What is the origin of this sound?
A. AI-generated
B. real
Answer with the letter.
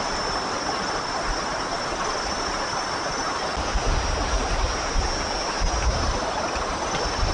B